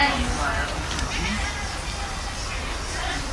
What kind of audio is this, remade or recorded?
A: recorded